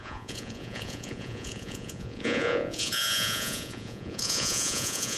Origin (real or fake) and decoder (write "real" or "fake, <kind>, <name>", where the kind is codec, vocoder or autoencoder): fake, vocoder, Vocos